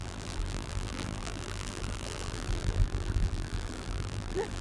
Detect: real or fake fake